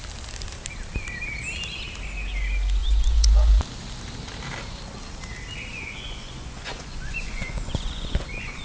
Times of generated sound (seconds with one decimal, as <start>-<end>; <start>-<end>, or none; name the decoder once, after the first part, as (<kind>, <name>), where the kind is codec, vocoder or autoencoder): 2.8-3.6 (vocoder, Vocos); 5.7-8.6